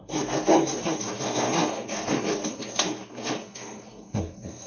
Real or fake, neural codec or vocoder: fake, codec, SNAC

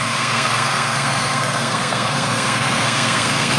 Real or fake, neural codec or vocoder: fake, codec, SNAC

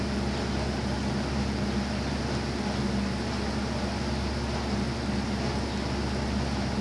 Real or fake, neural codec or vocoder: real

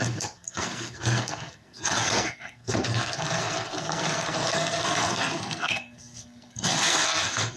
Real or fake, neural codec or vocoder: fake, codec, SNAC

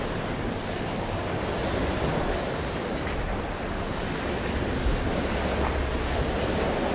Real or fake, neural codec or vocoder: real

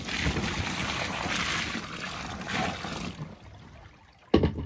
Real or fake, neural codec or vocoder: real